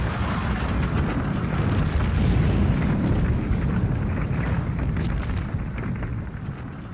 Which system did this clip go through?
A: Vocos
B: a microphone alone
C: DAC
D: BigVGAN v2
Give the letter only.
B